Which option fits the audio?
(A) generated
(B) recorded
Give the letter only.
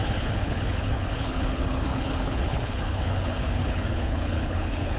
A